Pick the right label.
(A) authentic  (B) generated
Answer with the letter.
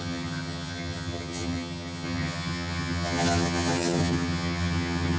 B